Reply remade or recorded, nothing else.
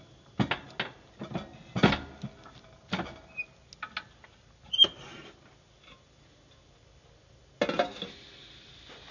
recorded